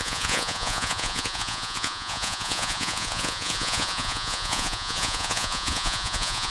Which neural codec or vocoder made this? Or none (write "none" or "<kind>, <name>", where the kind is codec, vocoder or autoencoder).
vocoder, Vocos